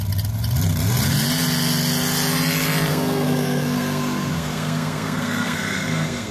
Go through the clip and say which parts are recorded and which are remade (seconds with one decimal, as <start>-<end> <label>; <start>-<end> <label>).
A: 0.0-2.9 recorded; 2.9-6.3 remade